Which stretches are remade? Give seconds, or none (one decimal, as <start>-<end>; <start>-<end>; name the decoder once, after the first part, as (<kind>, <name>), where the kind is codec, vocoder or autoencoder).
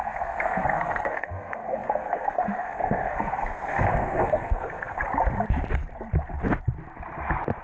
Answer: 0.0-5.0 (codec, SNAC)